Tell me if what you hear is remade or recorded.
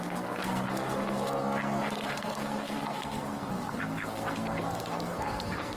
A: remade